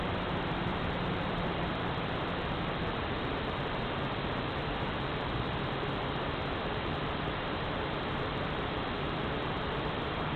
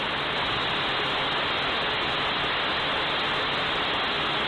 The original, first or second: second